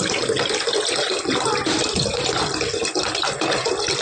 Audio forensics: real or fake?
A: real